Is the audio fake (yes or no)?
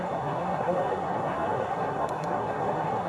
yes